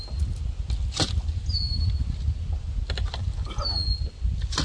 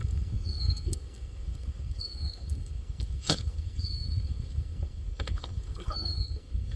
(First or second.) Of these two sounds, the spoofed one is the second